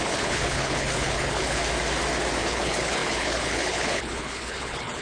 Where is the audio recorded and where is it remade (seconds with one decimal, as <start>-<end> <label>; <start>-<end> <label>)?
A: 0.0-1.6 remade; 1.6-2.4 recorded; 2.4-5.0 remade